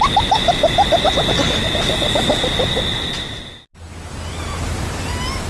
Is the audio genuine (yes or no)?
yes